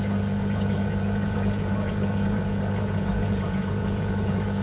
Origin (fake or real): fake